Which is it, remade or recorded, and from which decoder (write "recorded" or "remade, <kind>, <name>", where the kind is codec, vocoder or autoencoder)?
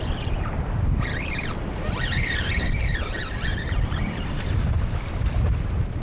remade, vocoder, BigVGAN v2